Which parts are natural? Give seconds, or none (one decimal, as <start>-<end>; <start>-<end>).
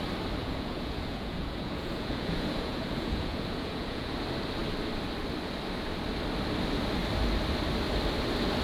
0.0-0.4; 4.1-8.6